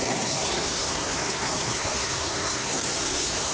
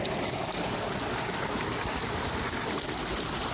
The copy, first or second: first